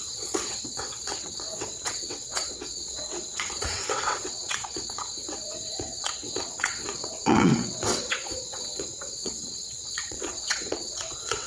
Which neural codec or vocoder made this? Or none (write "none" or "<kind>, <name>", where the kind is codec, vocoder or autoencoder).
vocoder, WaveNeXt